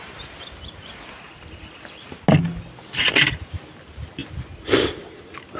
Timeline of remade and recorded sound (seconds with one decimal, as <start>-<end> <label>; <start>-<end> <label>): 0.0-5.6 recorded